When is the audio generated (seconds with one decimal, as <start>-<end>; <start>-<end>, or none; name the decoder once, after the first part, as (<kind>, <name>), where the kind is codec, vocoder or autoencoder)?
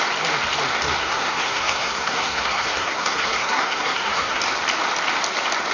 1.0-4.4 (codec, SNAC)